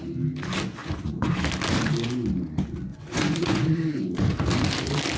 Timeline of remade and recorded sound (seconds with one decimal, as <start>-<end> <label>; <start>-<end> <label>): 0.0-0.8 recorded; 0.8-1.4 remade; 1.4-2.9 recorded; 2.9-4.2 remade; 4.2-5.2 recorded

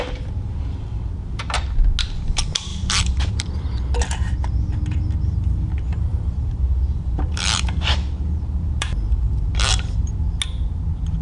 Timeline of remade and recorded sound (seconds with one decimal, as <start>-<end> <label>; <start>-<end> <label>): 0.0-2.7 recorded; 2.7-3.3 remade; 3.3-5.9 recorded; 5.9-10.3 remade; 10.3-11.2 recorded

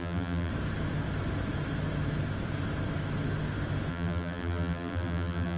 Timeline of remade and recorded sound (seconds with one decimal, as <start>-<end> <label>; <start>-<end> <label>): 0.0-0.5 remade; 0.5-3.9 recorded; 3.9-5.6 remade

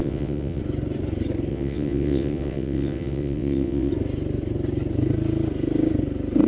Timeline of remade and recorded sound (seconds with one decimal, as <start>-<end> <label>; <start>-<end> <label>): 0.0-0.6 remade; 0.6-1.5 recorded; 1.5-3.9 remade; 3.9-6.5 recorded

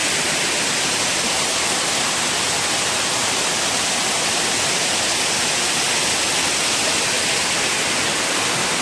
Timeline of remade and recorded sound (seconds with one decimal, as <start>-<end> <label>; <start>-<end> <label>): 0.0-8.8 recorded

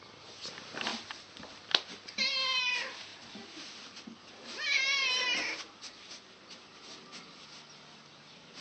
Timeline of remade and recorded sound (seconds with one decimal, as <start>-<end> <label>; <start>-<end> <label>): 0.0-8.6 recorded

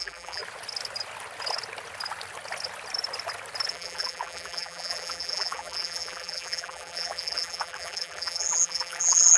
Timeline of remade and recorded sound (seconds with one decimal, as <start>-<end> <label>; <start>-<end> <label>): 0.0-0.4 remade; 0.4-3.7 recorded; 3.7-9.4 remade